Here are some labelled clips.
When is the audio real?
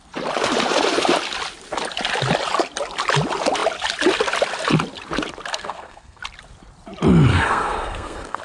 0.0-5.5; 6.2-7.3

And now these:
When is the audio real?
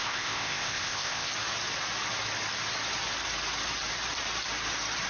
1.3-5.1